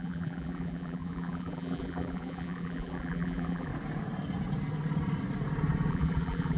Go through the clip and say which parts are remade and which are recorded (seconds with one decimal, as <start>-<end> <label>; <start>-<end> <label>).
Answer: 0.0-3.7 remade; 3.7-5.9 recorded; 5.9-6.6 remade